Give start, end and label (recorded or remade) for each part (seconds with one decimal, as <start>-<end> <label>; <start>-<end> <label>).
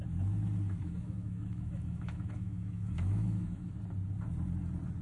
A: 0.0-0.8 recorded; 0.8-3.8 remade; 3.8-5.0 recorded